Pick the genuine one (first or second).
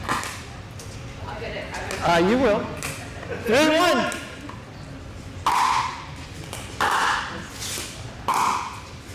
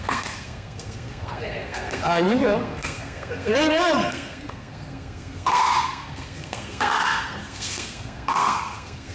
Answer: first